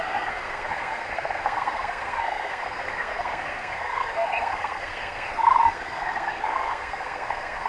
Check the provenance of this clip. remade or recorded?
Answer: remade